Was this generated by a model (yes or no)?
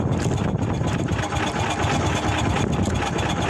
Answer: no